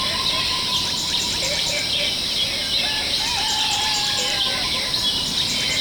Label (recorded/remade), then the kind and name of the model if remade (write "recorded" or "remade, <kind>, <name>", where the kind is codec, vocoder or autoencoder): recorded